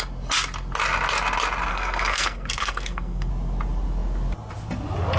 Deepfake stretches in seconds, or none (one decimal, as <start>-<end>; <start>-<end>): 1.7-3.3